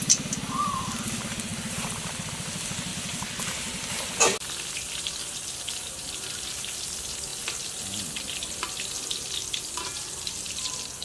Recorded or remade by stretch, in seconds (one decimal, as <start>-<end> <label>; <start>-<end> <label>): 0.0-2.9 remade; 2.9-6.1 recorded; 6.1-7.3 remade; 7.3-9.7 recorded; 9.7-11.0 remade